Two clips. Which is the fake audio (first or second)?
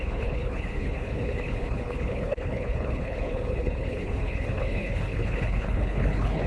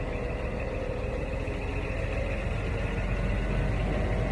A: first